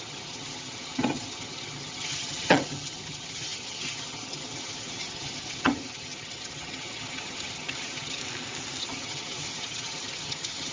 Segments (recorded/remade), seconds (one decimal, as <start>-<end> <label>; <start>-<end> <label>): 0.0-8.2 remade; 8.2-8.8 recorded; 8.8-10.7 remade